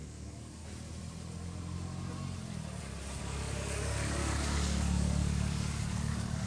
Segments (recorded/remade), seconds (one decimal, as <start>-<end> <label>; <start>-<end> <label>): 0.0-0.6 remade; 0.6-3.2 recorded; 3.2-6.5 remade